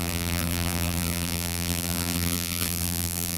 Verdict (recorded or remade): remade